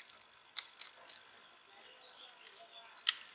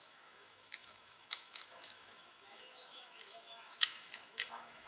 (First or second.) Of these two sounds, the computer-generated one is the second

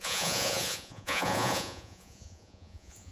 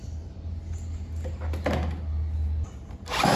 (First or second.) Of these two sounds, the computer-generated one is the first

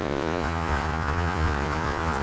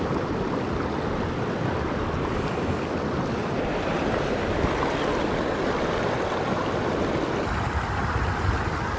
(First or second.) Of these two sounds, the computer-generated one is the first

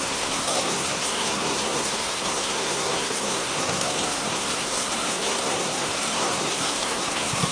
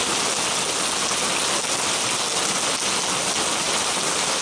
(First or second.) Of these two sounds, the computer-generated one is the first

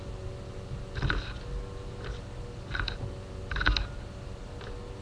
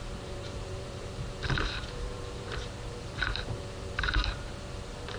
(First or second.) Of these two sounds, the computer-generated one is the second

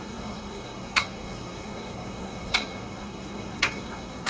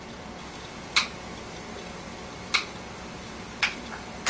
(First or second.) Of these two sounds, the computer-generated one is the first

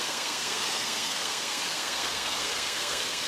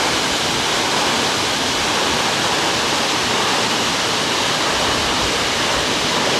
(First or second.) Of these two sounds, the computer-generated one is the first